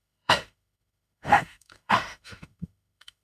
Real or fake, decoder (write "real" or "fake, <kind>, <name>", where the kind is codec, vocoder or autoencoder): fake, autoencoder, DAC-VAE